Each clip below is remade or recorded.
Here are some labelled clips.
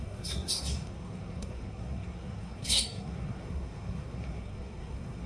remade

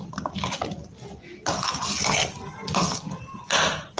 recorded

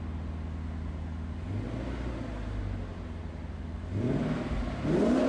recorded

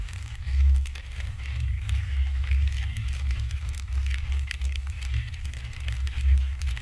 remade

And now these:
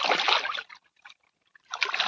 recorded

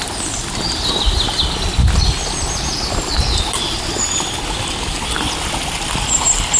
recorded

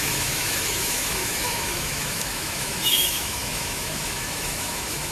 remade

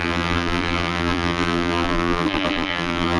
remade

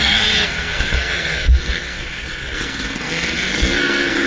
remade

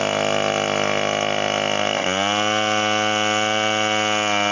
recorded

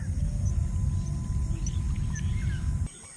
recorded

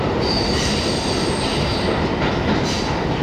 recorded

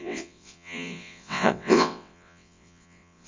remade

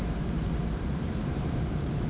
remade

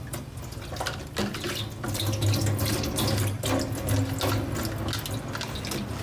recorded